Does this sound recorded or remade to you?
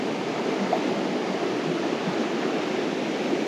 recorded